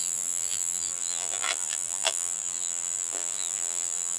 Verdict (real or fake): fake